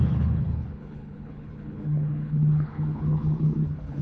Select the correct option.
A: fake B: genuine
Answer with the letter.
A